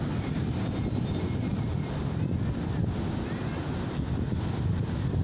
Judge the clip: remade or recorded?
recorded